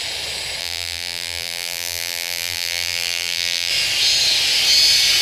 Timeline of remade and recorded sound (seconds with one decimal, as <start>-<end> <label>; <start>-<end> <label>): 0.0-0.6 recorded; 0.6-3.7 remade; 3.7-5.2 recorded